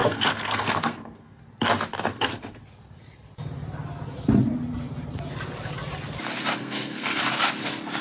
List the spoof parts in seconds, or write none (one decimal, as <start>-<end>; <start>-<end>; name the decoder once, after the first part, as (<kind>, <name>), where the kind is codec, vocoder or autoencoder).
0.0-1.4 (codec, SNAC); 2.1-2.6; 6.6-7.2

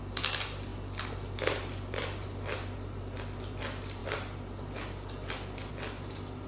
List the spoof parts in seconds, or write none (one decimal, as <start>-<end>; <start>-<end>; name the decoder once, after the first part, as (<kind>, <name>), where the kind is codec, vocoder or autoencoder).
none